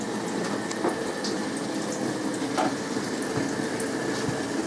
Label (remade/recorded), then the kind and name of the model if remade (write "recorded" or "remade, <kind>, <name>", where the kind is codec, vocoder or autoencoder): recorded